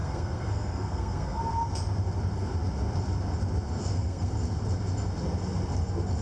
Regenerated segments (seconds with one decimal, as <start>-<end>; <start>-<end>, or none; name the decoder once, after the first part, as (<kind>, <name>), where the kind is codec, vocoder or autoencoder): 0.0-1.4 (codec, SNAC); 3.8-4.3

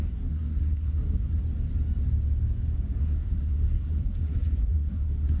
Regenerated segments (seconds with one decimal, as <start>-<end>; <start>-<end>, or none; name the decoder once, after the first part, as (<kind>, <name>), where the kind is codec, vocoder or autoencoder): 0.0-1.4 (codec, SNAC); 3.0-5.4

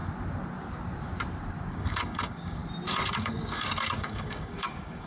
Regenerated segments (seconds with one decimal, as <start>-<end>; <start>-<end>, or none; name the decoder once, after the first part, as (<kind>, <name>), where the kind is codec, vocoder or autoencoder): 1.7-2.6 (codec, DAC); 3.1-5.1

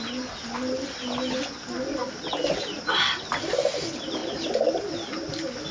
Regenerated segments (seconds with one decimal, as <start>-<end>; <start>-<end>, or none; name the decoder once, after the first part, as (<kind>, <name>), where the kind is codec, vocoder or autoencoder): none

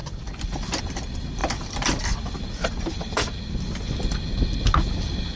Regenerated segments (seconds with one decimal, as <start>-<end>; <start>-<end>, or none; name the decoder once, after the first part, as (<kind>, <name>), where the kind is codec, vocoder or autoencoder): none

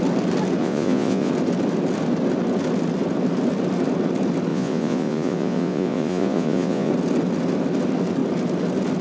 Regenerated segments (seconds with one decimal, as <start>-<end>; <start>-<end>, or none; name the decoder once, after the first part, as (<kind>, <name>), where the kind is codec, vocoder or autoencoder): 0.6-1.3 (vocoder, Vocos); 4.5-6.9